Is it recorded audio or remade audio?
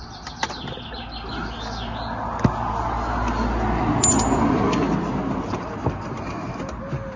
recorded